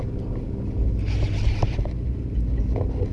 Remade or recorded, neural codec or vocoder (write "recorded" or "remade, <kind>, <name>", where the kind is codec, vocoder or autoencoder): recorded